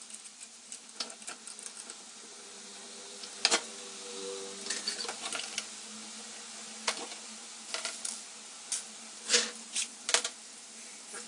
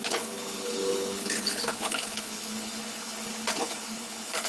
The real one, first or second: first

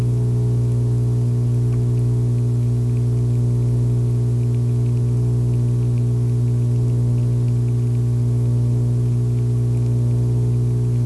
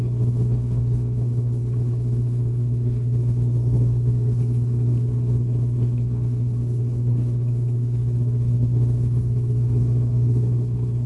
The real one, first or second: first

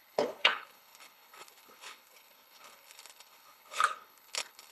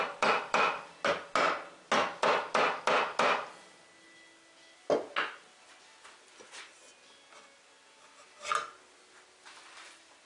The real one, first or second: second